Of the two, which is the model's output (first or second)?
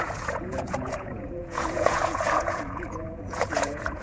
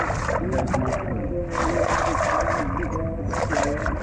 first